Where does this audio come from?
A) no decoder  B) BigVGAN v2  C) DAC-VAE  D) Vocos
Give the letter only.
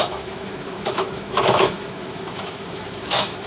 C